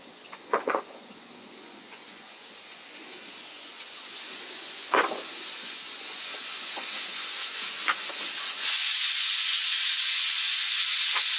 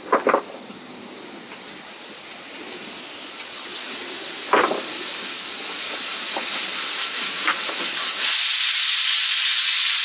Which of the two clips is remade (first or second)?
first